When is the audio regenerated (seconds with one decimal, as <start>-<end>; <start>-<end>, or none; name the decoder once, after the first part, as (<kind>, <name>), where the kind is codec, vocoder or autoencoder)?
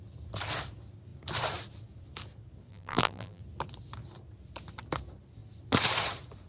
2.7-3.4 (vocoder, BigVGAN v2)